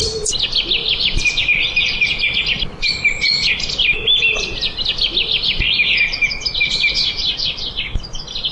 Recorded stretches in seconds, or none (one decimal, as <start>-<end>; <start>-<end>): 0.0-8.5